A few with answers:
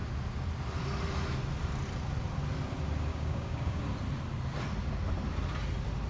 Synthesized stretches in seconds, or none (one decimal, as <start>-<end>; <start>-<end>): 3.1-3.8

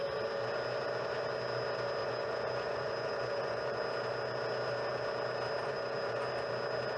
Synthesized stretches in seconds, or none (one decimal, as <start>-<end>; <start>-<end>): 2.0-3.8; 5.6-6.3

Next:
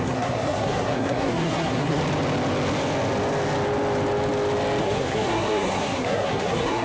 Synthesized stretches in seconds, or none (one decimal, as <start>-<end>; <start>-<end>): 0.0-2.0; 4.8-6.8